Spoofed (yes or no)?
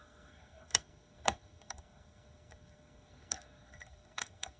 yes